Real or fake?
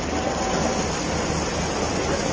real